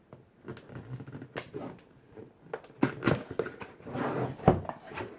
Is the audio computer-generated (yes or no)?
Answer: no